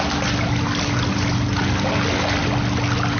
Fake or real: real